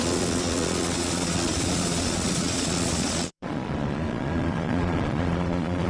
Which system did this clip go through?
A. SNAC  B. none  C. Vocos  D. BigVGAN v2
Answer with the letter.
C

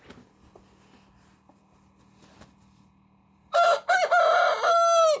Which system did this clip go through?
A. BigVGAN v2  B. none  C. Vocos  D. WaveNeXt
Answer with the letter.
B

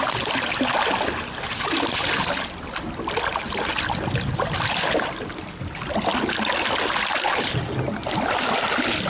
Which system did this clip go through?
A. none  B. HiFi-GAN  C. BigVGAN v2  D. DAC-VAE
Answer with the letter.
A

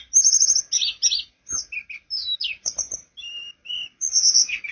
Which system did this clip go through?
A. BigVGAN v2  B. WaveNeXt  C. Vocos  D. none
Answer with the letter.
D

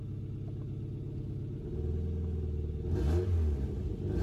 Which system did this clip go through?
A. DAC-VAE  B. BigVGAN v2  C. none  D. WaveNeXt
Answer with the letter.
C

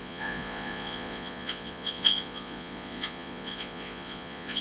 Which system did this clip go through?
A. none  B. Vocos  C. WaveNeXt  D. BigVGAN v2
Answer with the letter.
B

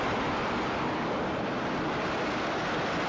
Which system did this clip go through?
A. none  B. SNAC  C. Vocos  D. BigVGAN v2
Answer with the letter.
A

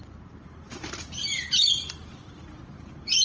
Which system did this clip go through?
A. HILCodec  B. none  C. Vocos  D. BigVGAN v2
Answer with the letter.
D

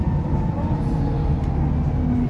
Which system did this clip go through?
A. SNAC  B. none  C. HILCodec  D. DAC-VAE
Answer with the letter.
B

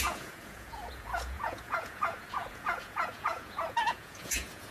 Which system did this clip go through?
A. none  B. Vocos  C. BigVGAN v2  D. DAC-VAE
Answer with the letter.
B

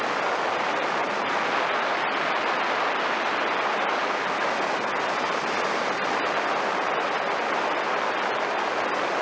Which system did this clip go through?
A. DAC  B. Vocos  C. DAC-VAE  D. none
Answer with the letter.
D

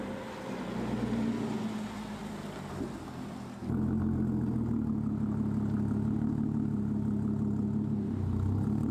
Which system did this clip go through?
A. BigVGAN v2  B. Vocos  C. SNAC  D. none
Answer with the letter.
D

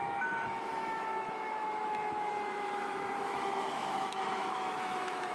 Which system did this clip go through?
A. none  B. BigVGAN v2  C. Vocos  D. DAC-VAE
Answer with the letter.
D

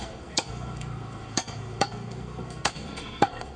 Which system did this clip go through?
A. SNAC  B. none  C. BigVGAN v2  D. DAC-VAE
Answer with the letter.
A